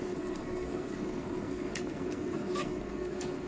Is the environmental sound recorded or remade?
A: remade